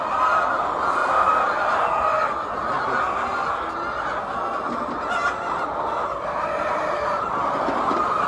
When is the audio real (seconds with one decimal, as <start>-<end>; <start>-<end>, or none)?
0.0-8.3